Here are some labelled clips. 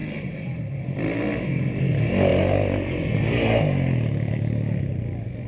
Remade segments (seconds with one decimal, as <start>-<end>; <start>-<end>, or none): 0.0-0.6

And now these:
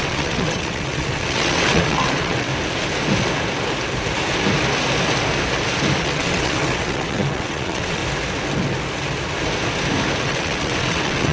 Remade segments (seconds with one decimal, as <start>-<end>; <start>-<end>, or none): 0.0-2.5; 6.0-8.0; 10.2-11.3

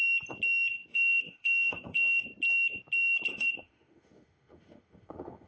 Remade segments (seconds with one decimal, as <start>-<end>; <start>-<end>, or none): 0.9-2.2; 3.3-5.5

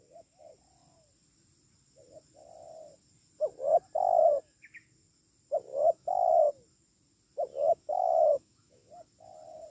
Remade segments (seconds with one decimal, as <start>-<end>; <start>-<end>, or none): 5.7-6.5; 7.9-8.9